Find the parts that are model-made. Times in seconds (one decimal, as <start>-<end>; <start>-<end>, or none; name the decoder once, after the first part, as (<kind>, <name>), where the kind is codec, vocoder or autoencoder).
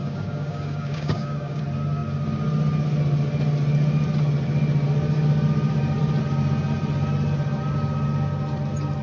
0.0-1.6 (codec, DAC)